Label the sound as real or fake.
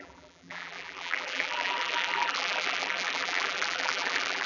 fake